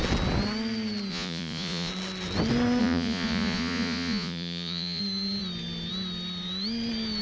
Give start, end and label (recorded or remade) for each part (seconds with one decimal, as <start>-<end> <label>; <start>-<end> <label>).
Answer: 0.0-1.1 recorded; 1.1-1.9 remade; 1.9-2.8 recorded; 2.8-5.0 remade; 5.0-7.2 recorded